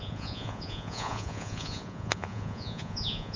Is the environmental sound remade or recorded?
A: remade